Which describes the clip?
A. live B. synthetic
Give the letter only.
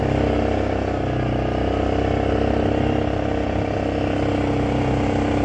A